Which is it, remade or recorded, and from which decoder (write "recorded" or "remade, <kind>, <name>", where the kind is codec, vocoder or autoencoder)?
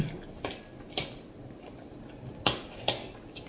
recorded